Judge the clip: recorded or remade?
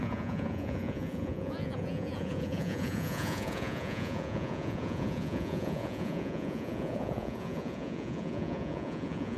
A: remade